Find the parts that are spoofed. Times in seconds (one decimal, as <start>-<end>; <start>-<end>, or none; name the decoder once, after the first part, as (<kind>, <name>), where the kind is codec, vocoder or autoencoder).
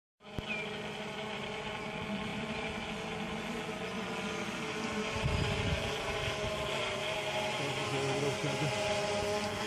none